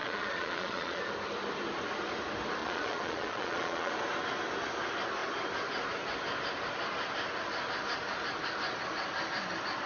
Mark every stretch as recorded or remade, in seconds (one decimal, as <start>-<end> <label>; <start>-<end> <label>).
0.0-1.0 remade; 1.0-2.6 recorded; 2.6-3.9 remade; 3.9-9.9 recorded